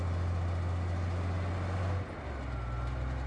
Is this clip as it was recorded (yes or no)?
yes